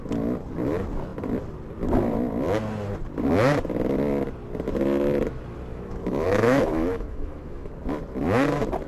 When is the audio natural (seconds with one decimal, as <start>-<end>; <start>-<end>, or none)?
0.0-5.7; 7.7-8.9